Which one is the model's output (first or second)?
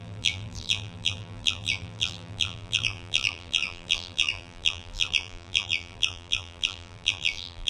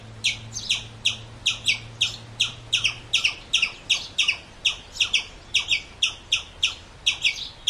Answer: first